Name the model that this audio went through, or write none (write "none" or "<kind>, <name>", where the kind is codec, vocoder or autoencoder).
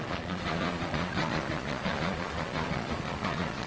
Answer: vocoder, Vocos